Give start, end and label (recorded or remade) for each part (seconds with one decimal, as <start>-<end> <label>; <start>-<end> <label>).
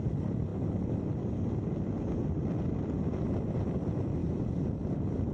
0.0-5.3 recorded